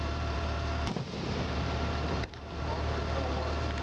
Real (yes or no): no